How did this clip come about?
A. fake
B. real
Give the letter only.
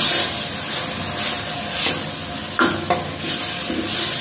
B